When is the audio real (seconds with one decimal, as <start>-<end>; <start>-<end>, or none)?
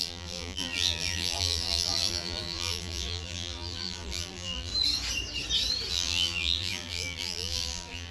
4.7-5.9